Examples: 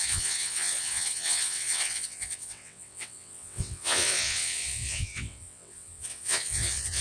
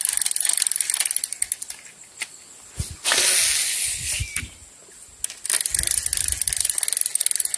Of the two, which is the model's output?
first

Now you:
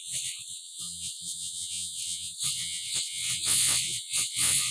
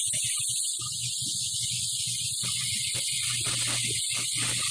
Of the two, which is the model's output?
first